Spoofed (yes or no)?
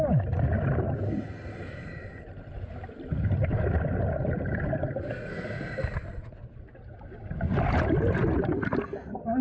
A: no